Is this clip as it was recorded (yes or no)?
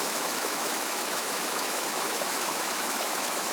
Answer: no